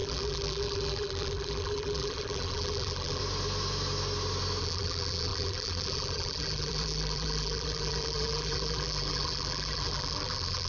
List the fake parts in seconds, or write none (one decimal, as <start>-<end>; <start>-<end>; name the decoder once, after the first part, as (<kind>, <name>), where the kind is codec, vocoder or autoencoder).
0.0-3.2 (vocoder, BigVGAN v2); 4.6-10.7

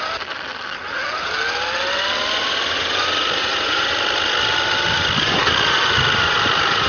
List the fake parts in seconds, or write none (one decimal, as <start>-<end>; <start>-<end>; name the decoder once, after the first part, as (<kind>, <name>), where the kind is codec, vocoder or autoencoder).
3.4-3.9 (vocoder, Vocos)

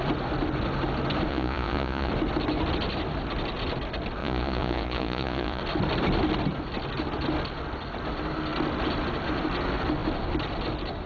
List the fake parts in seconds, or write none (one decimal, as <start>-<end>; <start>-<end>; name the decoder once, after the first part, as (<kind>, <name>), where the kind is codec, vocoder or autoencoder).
1.3-2.1 (vocoder, Vocos); 4.2-5.6

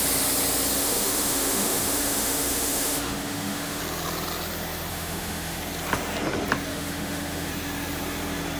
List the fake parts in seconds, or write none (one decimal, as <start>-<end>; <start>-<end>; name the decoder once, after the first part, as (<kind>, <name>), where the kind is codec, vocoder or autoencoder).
0.8-3.8 (autoencoder, DAC-VAE); 4.9-5.6; 6.7-7.5

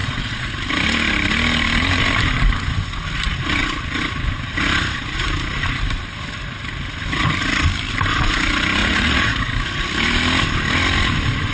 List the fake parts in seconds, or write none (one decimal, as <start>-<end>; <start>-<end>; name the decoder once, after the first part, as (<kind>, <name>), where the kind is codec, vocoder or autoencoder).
0.0-0.5 (vocoder, Vocos); 8.8-9.5

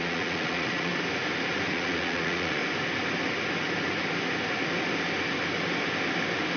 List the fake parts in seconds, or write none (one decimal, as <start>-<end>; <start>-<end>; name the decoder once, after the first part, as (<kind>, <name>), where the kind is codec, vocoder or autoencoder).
0.0-0.9 (vocoder, Vocos); 1.7-2.6

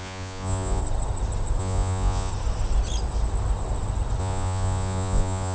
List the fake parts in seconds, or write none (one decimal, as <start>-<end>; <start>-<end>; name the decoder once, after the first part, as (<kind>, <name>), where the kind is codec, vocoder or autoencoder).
0.0-0.8 (vocoder, Vocos); 1.6-2.3; 4.2-5.5